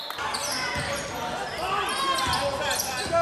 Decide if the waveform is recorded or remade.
recorded